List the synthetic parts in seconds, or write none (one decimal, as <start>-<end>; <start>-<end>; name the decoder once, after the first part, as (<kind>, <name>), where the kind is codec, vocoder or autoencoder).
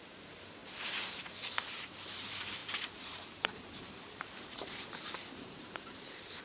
0.0-0.6 (vocoder, BigVGAN v2); 1.8-6.4